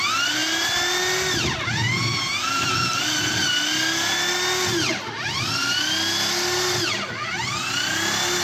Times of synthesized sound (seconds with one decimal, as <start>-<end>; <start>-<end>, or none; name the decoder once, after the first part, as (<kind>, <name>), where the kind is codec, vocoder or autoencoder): none